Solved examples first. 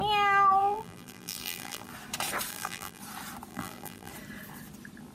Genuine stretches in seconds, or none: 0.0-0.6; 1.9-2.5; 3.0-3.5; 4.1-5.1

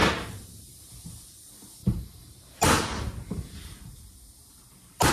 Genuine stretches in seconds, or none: 0.9-1.8

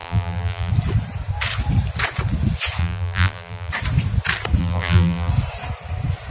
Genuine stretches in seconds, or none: 0.7-2.8; 3.7-4.6; 5.3-6.3

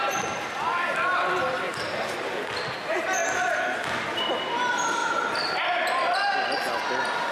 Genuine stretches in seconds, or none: 0.0-5.0; 5.9-7.3

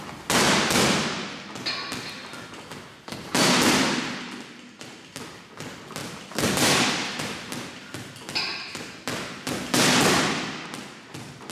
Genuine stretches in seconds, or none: 0.0-6.0; 7.5-11.5

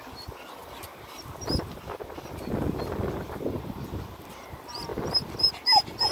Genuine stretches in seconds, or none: 0.0-4.9; 5.5-6.1

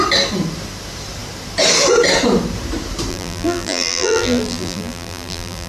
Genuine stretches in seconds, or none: 0.0-3.1

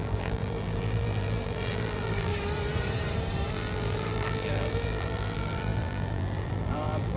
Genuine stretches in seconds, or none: 2.3-3.5